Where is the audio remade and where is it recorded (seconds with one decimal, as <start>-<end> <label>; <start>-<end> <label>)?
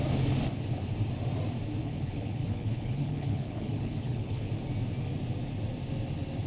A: 0.0-1.8 recorded; 1.8-4.5 remade; 4.5-6.5 recorded